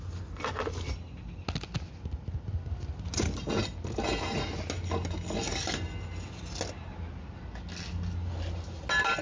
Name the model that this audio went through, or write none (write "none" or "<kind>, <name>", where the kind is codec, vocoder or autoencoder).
none